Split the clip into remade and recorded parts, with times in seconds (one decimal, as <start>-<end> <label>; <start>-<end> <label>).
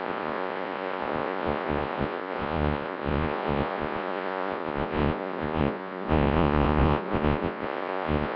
0.0-8.4 remade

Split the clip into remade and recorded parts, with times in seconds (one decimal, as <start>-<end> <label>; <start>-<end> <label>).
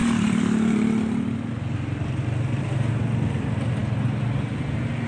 0.0-5.1 recorded